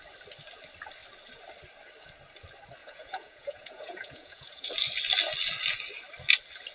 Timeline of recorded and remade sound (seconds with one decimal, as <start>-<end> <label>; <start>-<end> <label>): 0.0-2.8 recorded; 2.8-4.7 remade; 4.7-6.7 recorded